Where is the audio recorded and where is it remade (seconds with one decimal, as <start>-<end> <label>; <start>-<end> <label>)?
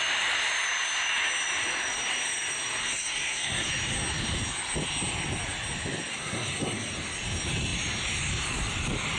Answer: 0.0-2.8 recorded; 2.8-3.7 remade; 3.7-6.1 recorded; 6.1-6.9 remade; 6.9-9.2 recorded